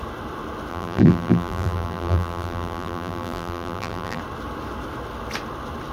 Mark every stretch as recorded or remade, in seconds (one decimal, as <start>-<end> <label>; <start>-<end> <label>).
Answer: 0.0-0.7 recorded; 0.7-4.2 remade; 4.2-5.9 recorded